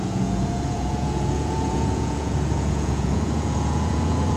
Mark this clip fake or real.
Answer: fake